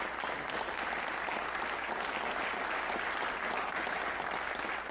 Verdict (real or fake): real